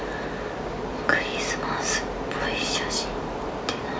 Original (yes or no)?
yes